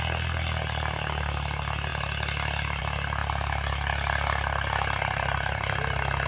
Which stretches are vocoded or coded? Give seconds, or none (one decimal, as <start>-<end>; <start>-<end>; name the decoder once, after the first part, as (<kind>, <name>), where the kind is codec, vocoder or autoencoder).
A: none